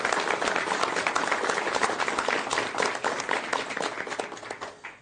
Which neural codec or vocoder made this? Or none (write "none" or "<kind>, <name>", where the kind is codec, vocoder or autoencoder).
none